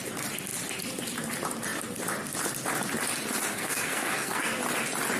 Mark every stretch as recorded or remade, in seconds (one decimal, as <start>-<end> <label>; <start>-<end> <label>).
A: 0.0-3.5 recorded; 3.5-4.6 remade; 4.6-5.2 recorded